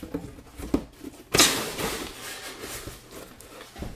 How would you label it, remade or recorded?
recorded